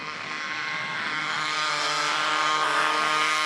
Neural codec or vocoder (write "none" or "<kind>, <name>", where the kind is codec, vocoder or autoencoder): codec, SNAC